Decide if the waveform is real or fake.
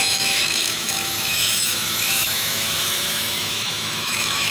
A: fake